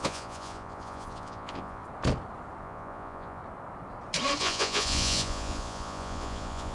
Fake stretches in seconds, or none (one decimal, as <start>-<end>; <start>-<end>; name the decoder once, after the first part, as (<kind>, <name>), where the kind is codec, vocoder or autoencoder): 0.0-1.8 (vocoder, Vocos); 2.6-3.4; 4.4-6.7